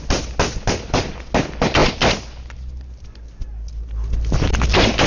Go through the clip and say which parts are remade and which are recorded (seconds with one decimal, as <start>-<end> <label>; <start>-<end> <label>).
0.0-5.1 recorded